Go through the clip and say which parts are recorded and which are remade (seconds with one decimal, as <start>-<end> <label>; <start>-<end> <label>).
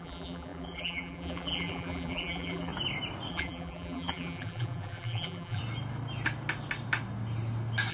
0.0-2.7 remade; 2.7-3.3 recorded; 3.3-5.6 remade; 5.6-7.9 recorded